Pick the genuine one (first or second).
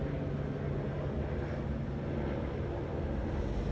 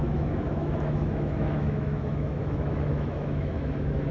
first